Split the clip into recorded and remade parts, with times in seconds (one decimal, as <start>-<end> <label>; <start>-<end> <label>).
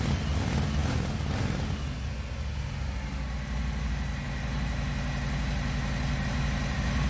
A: 0.0-7.1 recorded